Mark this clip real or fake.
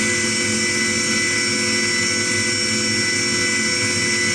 real